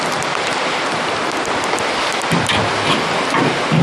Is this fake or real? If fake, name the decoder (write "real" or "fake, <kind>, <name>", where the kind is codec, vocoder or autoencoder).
real